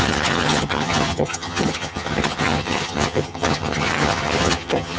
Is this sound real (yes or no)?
no